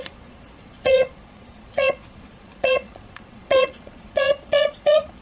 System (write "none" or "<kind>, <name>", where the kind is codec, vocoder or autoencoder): vocoder, Vocos